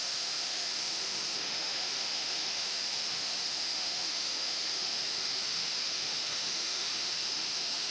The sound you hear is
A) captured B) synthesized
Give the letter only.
B